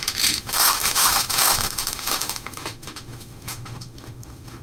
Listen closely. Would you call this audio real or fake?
fake